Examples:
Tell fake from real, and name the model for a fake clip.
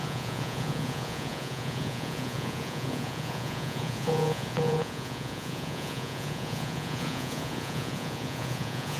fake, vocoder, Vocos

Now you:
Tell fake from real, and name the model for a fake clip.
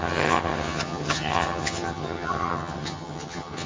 fake, vocoder, HiFi-GAN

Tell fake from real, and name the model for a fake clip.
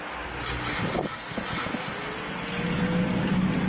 real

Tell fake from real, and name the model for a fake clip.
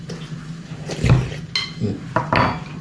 real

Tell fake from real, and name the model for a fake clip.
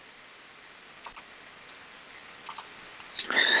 real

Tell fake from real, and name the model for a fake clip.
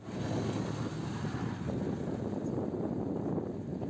real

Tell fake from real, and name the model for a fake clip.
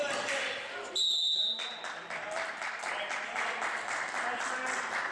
real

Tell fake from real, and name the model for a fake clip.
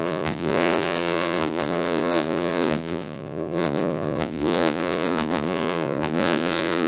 fake, vocoder, Vocos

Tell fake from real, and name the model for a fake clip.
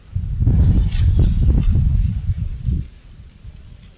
fake, vocoder, BigVGAN v2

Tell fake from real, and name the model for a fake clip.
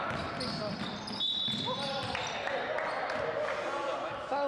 real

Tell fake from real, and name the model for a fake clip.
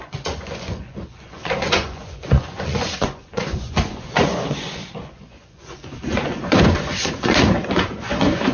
fake, vocoder, Vocos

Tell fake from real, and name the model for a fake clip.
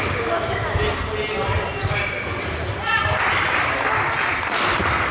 real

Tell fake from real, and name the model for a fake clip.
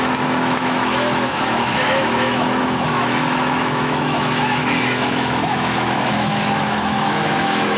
fake, autoencoder, DAC-VAE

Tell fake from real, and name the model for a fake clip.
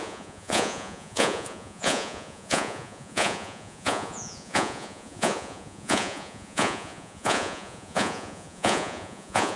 fake, vocoder, Vocos